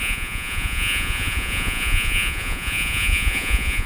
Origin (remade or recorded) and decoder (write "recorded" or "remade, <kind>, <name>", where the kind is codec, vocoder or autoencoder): remade, vocoder, Vocos